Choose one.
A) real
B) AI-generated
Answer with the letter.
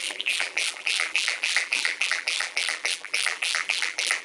B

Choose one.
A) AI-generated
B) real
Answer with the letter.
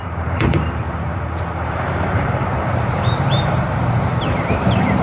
A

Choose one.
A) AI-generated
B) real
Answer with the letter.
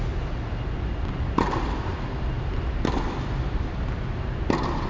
B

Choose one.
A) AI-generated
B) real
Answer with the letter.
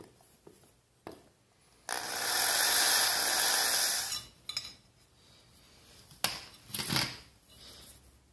B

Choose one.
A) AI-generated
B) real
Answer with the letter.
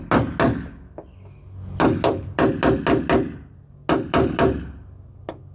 B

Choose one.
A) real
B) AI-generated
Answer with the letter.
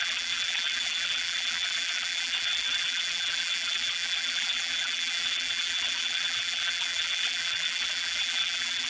B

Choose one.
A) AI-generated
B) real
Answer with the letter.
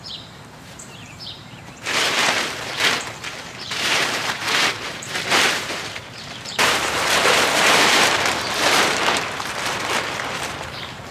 A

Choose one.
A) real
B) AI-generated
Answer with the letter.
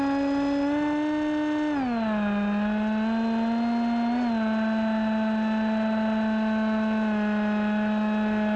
A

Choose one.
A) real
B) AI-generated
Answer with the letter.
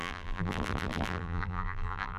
B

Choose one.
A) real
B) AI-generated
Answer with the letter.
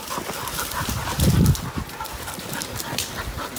A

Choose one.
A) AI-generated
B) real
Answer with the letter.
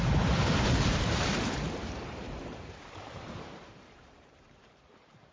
A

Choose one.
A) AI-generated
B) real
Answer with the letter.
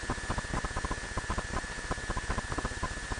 B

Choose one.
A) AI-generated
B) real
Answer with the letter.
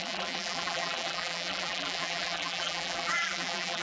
A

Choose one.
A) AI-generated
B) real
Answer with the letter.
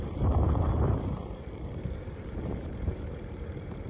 A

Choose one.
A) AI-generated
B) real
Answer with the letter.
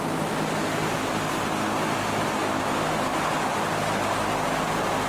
B